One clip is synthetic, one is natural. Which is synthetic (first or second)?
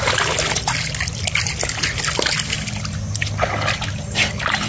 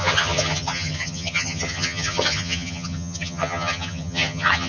second